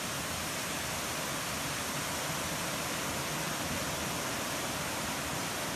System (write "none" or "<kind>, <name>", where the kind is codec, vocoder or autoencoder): none